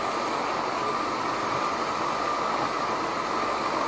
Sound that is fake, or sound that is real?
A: real